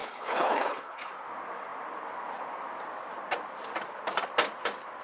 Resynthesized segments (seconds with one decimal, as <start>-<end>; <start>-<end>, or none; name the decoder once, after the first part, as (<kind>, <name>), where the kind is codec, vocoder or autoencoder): 0.0-1.1 (codec, HILCodec)